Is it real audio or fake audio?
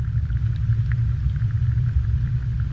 real